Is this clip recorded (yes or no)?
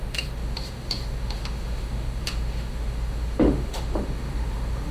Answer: no